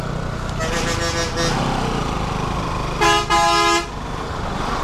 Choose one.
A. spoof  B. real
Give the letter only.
B